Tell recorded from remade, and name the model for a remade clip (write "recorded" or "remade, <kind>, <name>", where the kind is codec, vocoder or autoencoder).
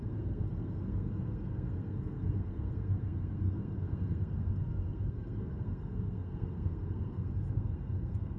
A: remade, codec, SNAC